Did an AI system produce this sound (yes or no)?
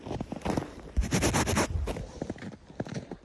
no